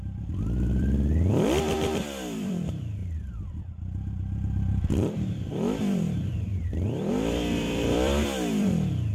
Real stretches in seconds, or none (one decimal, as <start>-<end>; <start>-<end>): 3.0-4.9